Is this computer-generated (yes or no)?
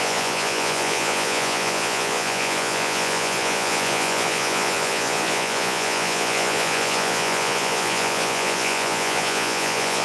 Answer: yes